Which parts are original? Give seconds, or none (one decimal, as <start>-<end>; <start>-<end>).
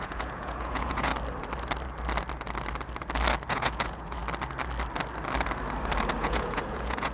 1.1-3.5; 4.2-6.2